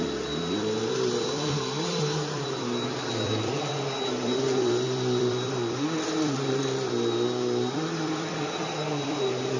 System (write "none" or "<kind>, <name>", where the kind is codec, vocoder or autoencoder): vocoder, BigVGAN v2